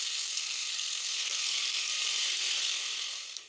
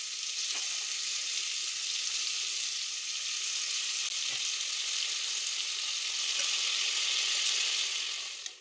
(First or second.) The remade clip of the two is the first